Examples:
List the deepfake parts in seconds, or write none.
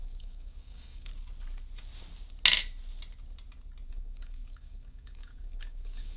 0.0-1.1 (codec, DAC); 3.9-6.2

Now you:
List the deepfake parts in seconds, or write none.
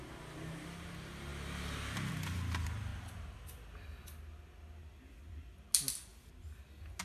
6.1-7.0 (vocoder, BigVGAN v2)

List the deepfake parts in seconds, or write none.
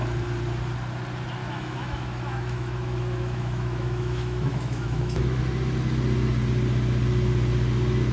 1.4-5.4 (autoencoder, DAC-VAE)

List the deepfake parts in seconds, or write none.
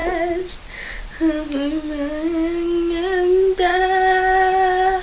none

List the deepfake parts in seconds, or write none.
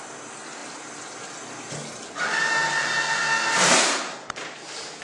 3.5-5.0 (vocoder, BigVGAN v2)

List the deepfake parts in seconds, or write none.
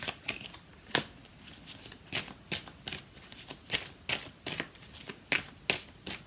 none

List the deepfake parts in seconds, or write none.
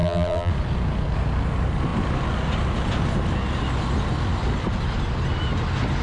0.0-0.5 (vocoder, BigVGAN v2)